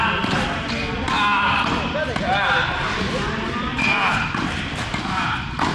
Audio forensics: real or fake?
real